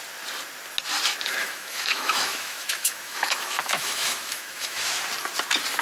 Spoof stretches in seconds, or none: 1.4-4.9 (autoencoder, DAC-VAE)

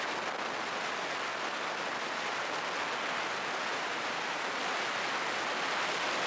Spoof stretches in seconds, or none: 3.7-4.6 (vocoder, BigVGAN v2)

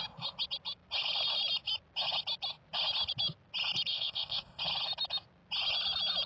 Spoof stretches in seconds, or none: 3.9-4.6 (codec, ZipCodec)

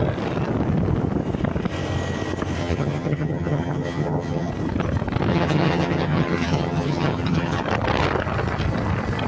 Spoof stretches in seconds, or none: 2.6-4.5 (vocoder, HiFi-GAN); 5.3-7.6

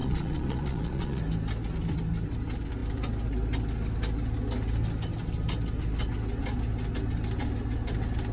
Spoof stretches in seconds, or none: 0.0-1.2 (vocoder, Vocos)